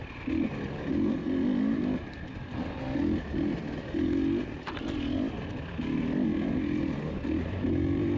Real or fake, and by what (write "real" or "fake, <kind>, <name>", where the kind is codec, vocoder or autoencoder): real